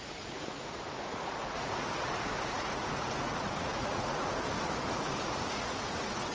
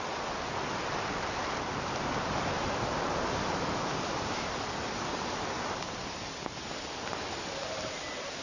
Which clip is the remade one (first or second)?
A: first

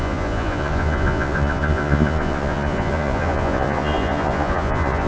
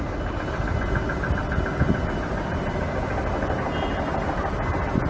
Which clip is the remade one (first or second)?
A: first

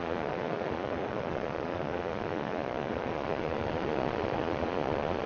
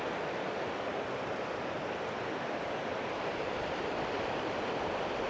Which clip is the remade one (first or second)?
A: first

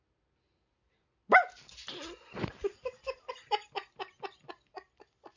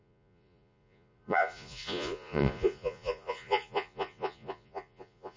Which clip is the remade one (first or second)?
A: second